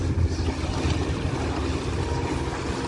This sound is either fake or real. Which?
real